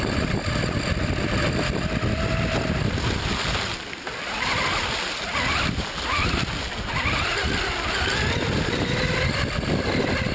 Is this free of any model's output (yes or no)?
yes